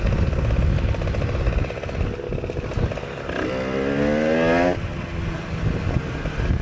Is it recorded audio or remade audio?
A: recorded